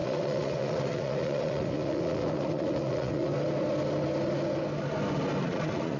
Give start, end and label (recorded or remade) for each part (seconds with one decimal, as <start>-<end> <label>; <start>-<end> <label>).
0.0-3.3 remade; 3.3-5.4 recorded; 5.4-6.0 remade